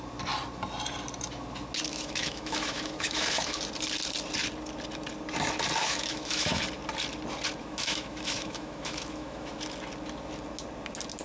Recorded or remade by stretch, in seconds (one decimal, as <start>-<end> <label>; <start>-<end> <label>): 0.0-1.9 recorded; 1.9-3.6 remade; 3.6-5.8 recorded; 5.8-6.6 remade; 6.6-7.6 recorded; 7.6-9.5 remade; 9.5-11.2 recorded